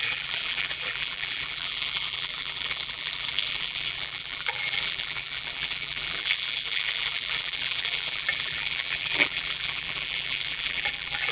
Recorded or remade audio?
remade